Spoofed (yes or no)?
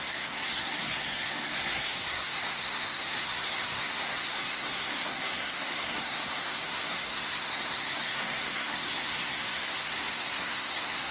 yes